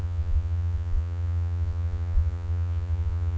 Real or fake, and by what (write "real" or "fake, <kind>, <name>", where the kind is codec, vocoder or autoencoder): fake, vocoder, Vocos